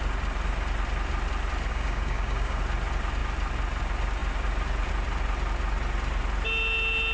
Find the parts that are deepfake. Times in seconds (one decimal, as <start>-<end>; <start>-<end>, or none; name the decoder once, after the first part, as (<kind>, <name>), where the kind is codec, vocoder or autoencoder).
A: 1.7-2.6 (codec, DAC)